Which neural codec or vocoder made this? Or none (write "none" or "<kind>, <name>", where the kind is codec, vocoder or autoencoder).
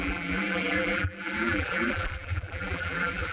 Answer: vocoder, BigVGAN v2